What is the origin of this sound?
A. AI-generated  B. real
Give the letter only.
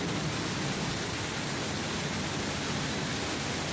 B